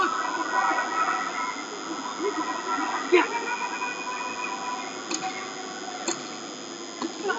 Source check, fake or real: real